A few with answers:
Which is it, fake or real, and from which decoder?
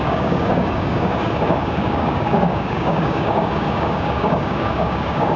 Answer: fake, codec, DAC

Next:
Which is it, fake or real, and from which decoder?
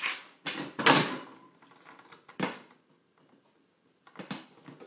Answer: real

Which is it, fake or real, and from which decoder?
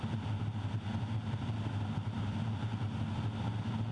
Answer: real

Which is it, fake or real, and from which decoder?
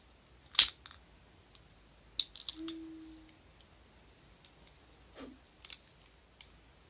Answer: real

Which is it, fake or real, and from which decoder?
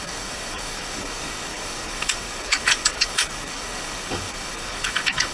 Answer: fake, codec, DAC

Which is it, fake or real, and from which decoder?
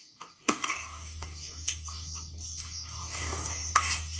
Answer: fake, codec, DAC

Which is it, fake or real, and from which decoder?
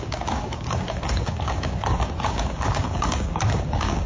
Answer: fake, codec, DAC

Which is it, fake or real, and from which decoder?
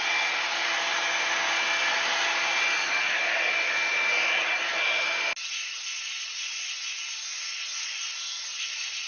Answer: real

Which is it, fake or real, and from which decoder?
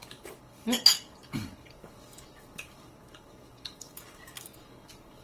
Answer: fake, codec, DAC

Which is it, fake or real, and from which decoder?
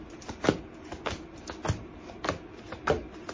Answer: real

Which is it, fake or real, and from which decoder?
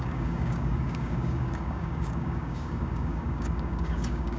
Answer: fake, codec, DAC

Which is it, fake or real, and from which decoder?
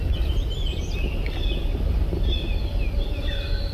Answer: real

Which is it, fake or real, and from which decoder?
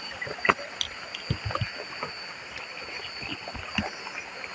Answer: real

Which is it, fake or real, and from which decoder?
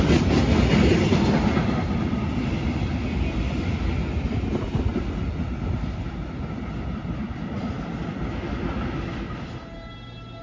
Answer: real